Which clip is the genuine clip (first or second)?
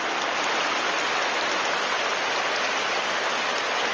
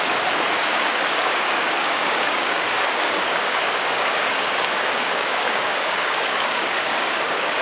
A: first